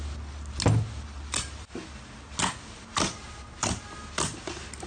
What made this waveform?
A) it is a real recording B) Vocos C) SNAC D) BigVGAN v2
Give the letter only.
A